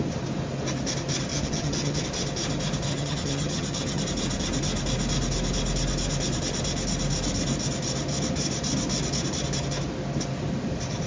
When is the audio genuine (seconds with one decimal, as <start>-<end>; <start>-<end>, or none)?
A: 0.0-1.3; 2.0-2.9; 4.0-11.1